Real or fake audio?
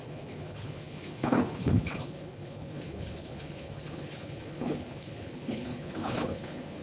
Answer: fake